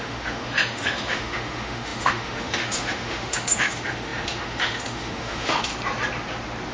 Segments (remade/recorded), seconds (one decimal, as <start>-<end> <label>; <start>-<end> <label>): 0.0-5.7 remade; 5.7-6.7 recorded